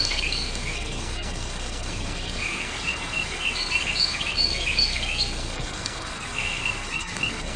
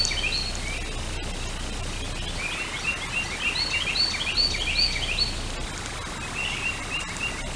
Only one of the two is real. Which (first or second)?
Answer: second